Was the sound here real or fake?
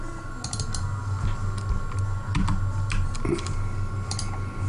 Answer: real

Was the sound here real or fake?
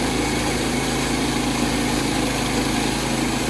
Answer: real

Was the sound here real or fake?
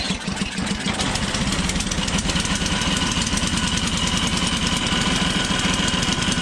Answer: real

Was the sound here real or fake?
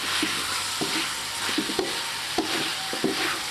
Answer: real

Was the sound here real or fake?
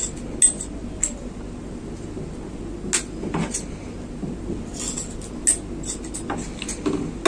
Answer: real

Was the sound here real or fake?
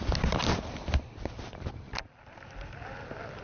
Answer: real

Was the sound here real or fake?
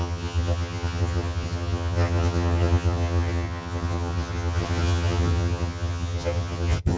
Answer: fake